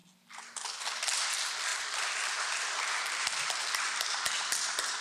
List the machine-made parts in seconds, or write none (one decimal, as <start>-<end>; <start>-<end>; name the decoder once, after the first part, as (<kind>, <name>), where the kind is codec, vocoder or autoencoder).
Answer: 1.7-5.0 (vocoder, BigVGAN v2)